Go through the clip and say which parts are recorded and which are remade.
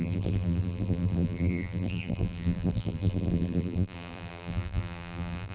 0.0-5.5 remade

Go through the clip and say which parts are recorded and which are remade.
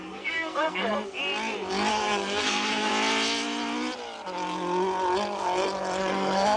0.0-1.2 remade; 1.2-1.9 recorded; 1.9-2.9 remade; 2.9-6.0 recorded; 6.0-6.6 remade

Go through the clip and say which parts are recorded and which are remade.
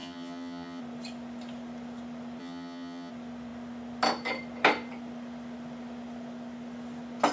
0.0-0.8 remade; 0.8-2.4 recorded; 2.4-3.1 remade; 3.1-7.3 recorded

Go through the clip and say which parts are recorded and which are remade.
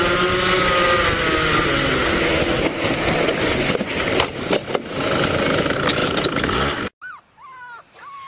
0.0-8.3 recorded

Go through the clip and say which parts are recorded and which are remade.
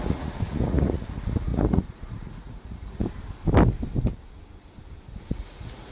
0.0-3.0 remade; 3.0-5.3 recorded; 5.3-5.9 remade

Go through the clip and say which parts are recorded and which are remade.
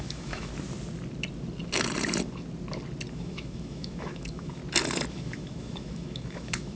0.0-0.5 remade; 0.5-3.1 recorded; 3.1-4.6 remade; 4.6-5.1 recorded; 5.1-6.8 remade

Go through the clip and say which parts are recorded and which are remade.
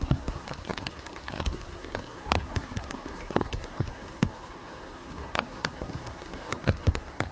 0.0-7.3 remade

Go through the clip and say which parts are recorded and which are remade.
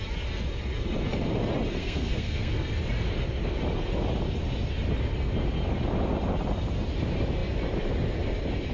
0.0-1.8 recorded; 1.8-2.5 remade; 2.5-8.7 recorded